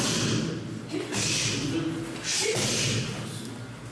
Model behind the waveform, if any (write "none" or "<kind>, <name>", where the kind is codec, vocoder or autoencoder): none